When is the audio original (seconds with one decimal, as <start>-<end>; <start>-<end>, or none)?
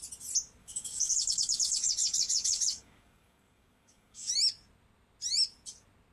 0.0-0.6; 4.3-6.1